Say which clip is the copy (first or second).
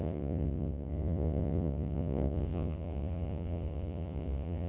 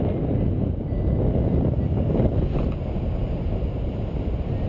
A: first